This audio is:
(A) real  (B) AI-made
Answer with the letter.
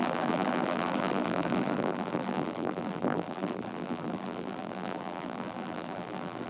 B